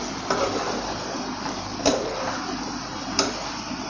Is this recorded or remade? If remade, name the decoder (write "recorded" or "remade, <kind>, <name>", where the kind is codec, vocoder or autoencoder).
recorded